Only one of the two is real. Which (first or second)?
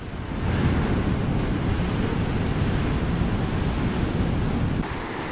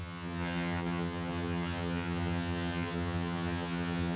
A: first